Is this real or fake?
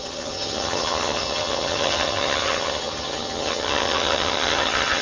fake